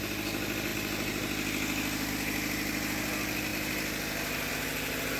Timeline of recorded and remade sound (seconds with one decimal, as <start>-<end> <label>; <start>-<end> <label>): 0.0-5.2 recorded